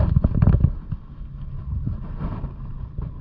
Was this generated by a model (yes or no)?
no